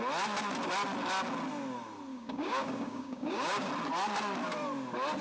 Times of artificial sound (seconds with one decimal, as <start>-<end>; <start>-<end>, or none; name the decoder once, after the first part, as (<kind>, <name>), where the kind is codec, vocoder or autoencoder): 2.1-3.7 (codec, DAC)